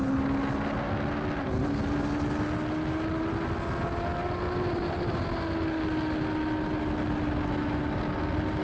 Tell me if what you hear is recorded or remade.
recorded